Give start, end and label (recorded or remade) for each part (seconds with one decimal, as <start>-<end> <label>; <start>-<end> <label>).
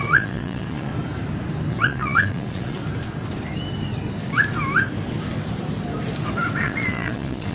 0.0-0.9 remade; 0.9-1.7 recorded; 1.7-2.8 remade; 2.8-6.6 recorded; 6.6-7.5 remade